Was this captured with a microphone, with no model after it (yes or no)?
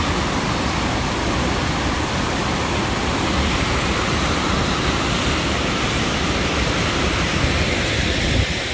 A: yes